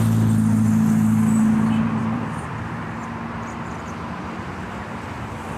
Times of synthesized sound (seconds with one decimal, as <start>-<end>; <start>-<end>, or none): 2.0-3.7